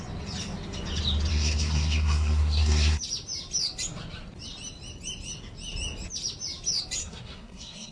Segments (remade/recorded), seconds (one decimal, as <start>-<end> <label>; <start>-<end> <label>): 0.0-1.3 recorded; 1.3-3.0 remade; 3.0-7.0 recorded; 7.0-7.9 remade